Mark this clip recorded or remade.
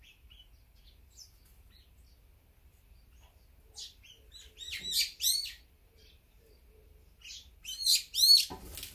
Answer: recorded